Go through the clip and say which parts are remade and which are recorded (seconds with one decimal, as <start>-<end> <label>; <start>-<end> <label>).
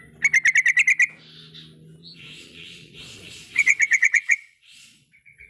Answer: 0.0-2.0 recorded; 2.0-5.5 remade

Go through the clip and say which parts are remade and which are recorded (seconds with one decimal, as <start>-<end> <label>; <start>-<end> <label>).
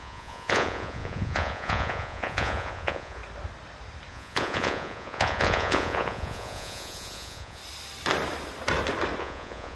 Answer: 0.0-3.2 remade; 3.2-4.1 recorded; 4.1-7.6 remade; 7.6-9.2 recorded; 9.2-9.8 remade